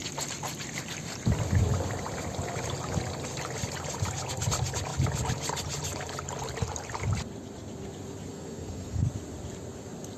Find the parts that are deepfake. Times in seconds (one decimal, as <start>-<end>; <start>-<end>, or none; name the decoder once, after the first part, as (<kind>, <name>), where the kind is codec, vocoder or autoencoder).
8.3-9.1 (codec, SNAC)